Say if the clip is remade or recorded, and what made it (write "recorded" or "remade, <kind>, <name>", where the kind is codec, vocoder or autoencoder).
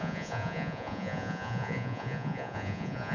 remade, vocoder, Vocos